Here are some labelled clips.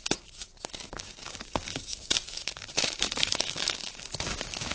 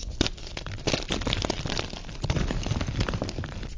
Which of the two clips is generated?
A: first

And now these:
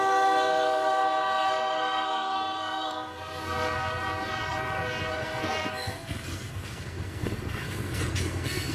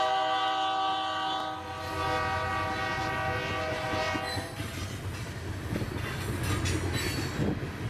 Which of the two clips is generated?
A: first